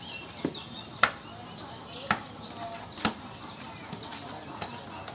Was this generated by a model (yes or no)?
no